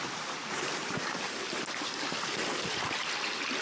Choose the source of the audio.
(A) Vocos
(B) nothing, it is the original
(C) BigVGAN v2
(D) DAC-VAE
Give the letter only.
B